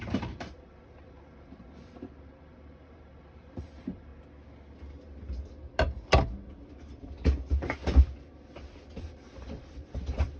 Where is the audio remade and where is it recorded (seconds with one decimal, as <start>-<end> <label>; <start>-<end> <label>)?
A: 0.0-4.1 remade; 4.1-9.0 recorded; 9.0-10.4 remade